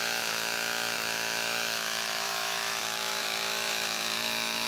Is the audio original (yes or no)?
no